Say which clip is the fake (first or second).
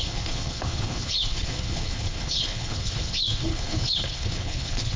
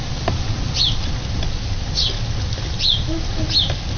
first